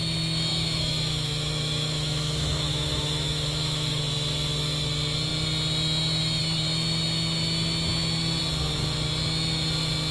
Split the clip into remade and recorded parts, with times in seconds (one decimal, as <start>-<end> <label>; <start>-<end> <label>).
0.0-0.5 recorded; 0.5-4.0 remade; 4.0-10.1 recorded